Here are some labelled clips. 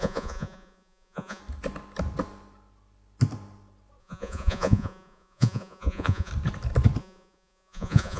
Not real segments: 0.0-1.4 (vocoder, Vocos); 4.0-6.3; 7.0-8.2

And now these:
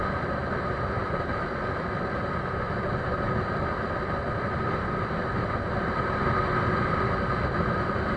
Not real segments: none

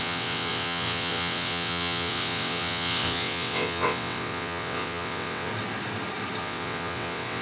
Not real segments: 0.0-5.5 (vocoder, WaveNeXt); 6.4-7.4

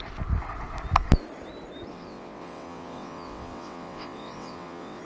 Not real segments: 1.9-5.0 (vocoder, WaveNeXt)

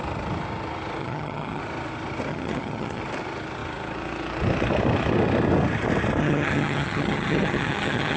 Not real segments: 1.0-1.6 (vocoder, HiFi-GAN); 2.3-3.0; 6.2-8.2

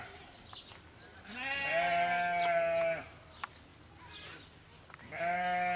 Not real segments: none

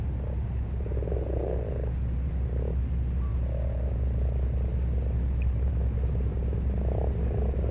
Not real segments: none